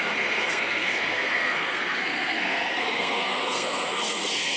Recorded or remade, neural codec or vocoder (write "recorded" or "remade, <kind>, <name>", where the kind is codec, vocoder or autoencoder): remade, codec, SNAC